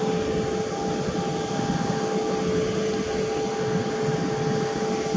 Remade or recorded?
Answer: recorded